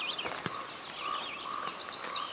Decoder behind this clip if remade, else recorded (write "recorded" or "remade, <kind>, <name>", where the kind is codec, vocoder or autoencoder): recorded